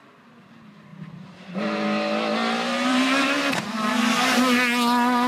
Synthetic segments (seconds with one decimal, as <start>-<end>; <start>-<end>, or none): 0.9-3.5